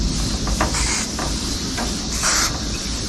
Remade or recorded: recorded